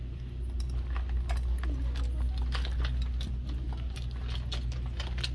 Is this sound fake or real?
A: real